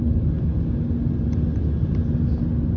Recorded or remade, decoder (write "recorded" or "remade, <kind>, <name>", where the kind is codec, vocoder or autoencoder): recorded